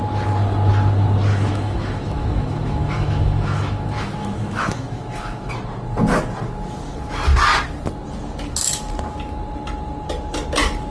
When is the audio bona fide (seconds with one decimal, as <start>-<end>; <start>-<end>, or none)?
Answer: 0.0-1.3; 5.5-10.9